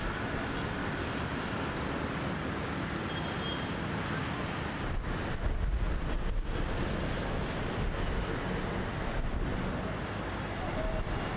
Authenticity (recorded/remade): recorded